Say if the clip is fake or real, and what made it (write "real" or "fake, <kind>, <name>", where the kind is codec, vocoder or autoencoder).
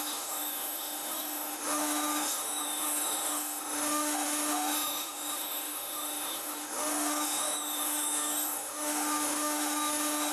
fake, autoencoder, DAC-VAE